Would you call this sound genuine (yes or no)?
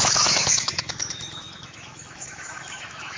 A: no